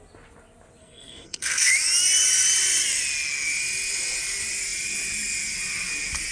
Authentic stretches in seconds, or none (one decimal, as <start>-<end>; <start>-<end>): 0.0-0.8; 1.7-6.3

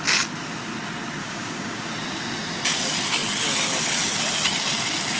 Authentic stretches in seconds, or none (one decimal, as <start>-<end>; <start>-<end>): 0.0-1.2; 1.9-5.2